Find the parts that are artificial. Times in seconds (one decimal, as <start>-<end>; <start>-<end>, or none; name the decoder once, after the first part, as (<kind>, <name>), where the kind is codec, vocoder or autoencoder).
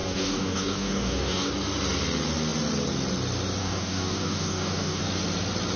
0.0-1.5 (codec, DAC); 3.6-5.0